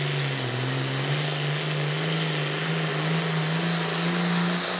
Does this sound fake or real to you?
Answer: real